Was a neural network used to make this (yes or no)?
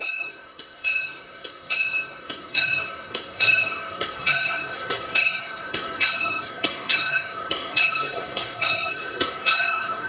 yes